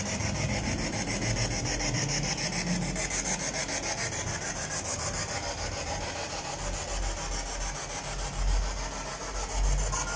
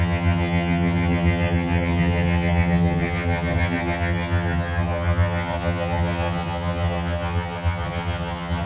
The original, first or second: first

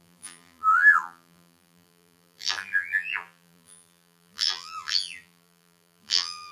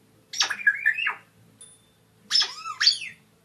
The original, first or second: second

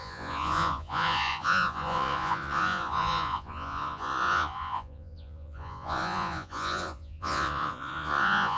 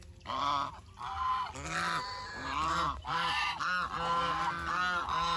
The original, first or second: second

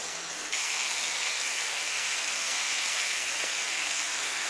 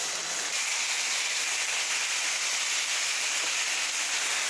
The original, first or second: second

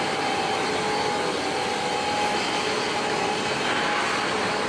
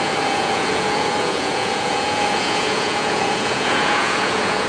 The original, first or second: first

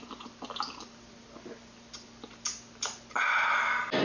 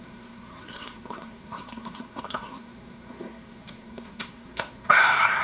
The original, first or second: first